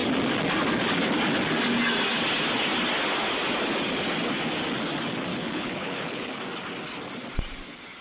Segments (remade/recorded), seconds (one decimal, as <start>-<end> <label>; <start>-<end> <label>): 0.0-5.3 recorded; 5.3-6.3 remade; 6.3-8.0 recorded